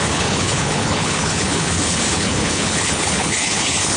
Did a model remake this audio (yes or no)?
yes